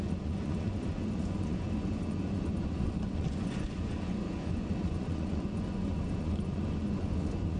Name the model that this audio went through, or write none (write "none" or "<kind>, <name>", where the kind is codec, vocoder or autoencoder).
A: vocoder, Vocos